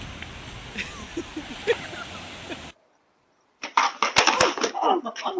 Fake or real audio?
real